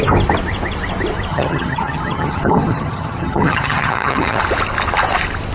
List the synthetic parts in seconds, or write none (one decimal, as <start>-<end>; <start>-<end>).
1.3-4.4